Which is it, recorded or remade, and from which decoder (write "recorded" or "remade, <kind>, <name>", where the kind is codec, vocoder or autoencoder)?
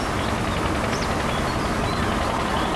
recorded